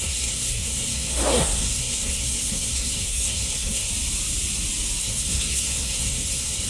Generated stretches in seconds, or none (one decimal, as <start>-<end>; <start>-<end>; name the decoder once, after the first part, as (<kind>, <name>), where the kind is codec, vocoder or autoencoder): 0.0-3.9 (codec, SNAC); 5.0-6.7